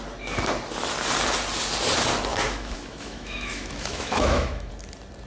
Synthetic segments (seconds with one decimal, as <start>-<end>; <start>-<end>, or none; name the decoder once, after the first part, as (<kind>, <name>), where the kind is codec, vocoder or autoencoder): 2.3-4.7 (autoencoder, DAC-VAE)